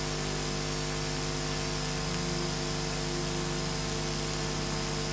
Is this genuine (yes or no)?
yes